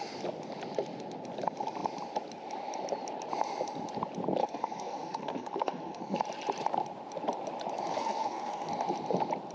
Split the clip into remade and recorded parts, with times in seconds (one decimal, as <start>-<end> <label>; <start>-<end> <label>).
0.0-4.4 recorded; 4.4-6.2 remade; 6.2-7.9 recorded; 7.9-8.7 remade; 8.7-9.5 recorded